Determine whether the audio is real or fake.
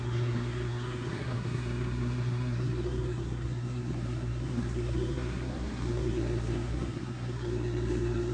fake